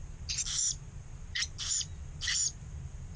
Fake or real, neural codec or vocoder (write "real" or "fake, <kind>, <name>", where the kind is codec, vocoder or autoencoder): fake, vocoder, BigVGAN v2